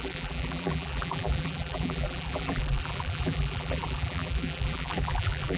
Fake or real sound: fake